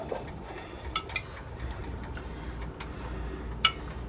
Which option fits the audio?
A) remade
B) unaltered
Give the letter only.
B